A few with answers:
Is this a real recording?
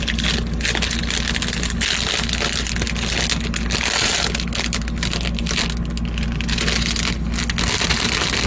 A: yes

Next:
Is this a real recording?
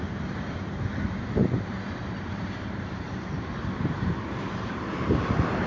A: no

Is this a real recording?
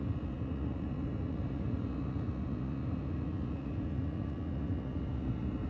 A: no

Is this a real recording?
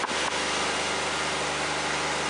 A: yes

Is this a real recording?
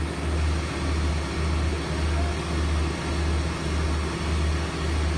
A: yes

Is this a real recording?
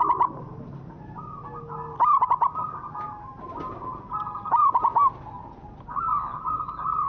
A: yes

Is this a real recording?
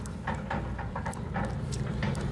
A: yes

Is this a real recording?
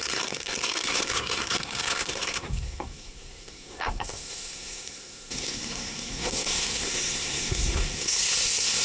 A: no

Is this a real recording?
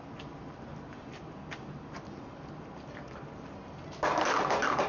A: yes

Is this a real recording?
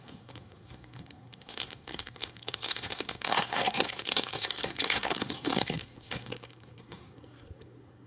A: no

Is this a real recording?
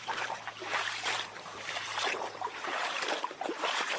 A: no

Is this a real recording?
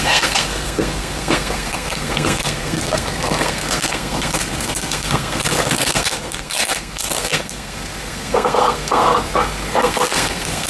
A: no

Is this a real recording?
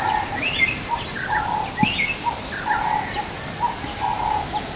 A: yes